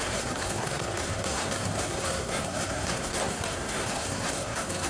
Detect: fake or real fake